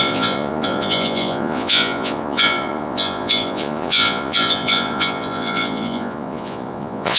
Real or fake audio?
fake